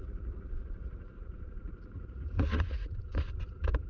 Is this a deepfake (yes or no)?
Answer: yes